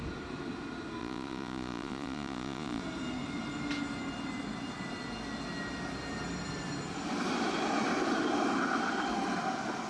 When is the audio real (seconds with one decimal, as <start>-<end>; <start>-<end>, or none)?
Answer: 0.0-1.0; 2.8-9.9